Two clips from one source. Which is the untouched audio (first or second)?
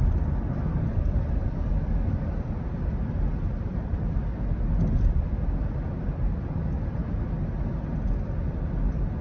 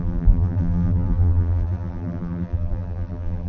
first